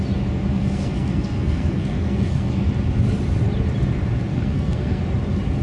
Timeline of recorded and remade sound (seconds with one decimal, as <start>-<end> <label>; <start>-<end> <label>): 0.0-0.5 recorded; 0.5-2.7 remade; 2.7-4.3 recorded; 4.3-5.0 remade; 5.0-5.6 recorded